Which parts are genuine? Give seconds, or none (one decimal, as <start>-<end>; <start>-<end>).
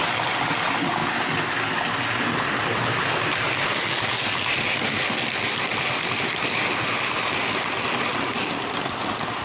0.0-9.4